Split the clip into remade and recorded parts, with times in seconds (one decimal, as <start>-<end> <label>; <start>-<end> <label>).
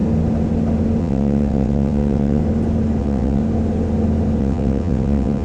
0.0-1.0 recorded; 1.0-2.4 remade; 2.4-3.0 recorded; 3.0-3.4 remade; 3.4-4.4 recorded; 4.4-5.4 remade